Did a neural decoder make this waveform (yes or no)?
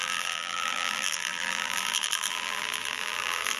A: yes